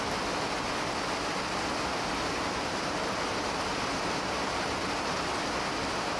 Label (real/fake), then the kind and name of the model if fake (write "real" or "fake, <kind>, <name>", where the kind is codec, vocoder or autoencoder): real